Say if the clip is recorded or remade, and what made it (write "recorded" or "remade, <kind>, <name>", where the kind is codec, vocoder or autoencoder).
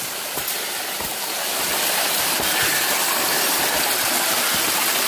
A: recorded